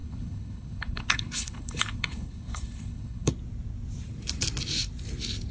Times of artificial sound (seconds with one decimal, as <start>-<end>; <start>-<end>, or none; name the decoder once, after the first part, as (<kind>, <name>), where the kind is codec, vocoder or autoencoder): 0.0-3.3 (codec, HILCodec)

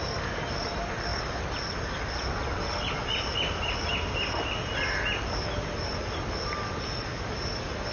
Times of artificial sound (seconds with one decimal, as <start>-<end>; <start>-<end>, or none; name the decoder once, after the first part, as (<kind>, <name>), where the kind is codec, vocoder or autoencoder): none

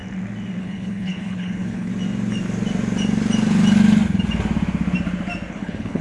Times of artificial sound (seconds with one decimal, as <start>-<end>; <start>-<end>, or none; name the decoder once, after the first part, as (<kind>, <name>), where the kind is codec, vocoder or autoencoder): 0.6-1.9 (codec, HILCodec); 5.5-6.0

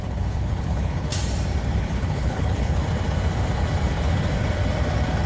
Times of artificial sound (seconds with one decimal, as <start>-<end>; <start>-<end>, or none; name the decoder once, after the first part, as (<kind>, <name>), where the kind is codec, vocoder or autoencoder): 0.0-1.1 (codec, HILCodec); 1.8-2.8

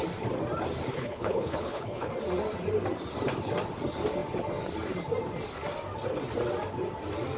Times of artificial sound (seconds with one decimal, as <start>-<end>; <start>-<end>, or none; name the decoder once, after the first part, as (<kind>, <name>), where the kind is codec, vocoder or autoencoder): 0.9-2.1 (codec, HILCodec)

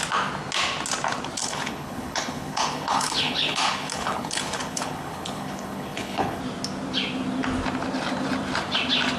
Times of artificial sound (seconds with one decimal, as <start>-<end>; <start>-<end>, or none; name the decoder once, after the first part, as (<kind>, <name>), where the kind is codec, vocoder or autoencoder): 1.4-6.4 (codec, HILCodec)